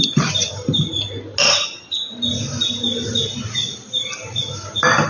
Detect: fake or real real